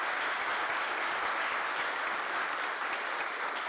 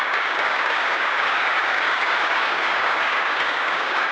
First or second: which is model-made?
second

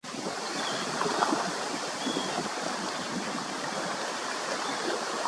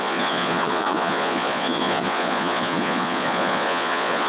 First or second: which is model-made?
second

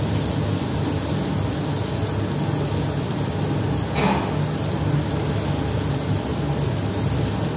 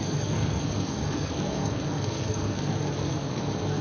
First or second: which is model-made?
second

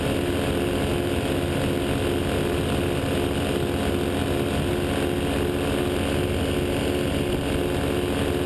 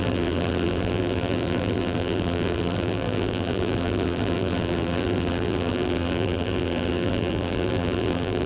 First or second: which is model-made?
second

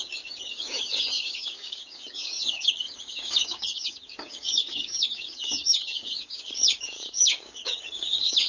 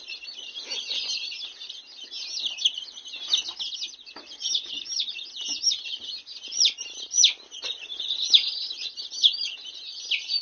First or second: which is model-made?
first